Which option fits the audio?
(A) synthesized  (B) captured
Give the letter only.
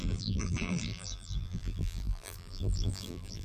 A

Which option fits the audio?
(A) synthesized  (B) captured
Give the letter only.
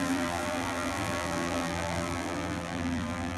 A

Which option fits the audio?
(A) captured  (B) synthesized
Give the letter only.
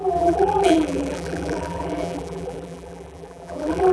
B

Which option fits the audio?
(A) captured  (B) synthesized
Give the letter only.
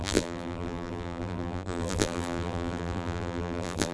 B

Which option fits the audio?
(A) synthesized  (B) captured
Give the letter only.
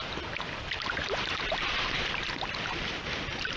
A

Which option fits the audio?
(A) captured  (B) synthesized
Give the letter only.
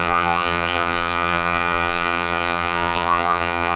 B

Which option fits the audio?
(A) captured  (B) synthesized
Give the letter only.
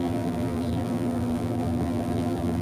B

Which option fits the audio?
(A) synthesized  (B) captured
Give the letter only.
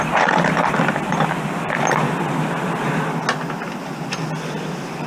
B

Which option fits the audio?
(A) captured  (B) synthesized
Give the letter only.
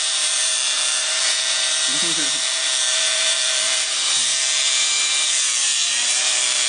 B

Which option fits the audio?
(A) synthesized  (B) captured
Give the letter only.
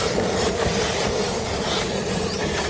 A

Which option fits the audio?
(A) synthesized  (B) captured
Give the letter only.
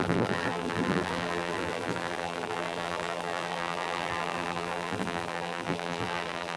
A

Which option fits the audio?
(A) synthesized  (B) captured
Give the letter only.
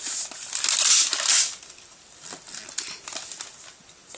B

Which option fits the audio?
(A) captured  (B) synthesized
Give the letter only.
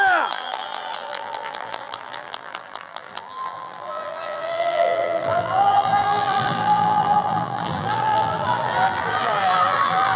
B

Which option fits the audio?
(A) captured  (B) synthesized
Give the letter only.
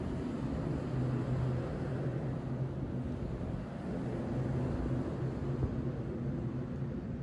A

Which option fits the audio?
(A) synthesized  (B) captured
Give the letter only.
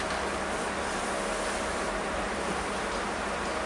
B